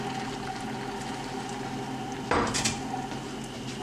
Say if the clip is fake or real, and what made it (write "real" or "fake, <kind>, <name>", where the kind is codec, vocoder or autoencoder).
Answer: real